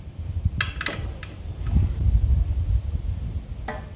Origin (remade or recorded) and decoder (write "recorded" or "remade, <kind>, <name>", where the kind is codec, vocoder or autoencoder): recorded